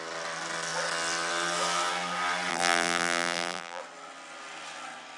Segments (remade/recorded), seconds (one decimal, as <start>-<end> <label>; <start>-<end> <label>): 0.0-2.5 recorded; 2.5-3.8 remade; 3.8-5.2 recorded